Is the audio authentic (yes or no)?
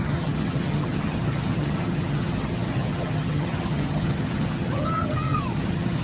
no